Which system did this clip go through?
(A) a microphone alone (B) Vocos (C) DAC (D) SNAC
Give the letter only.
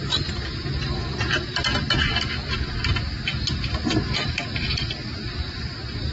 A